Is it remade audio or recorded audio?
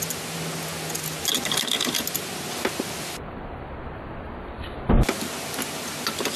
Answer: recorded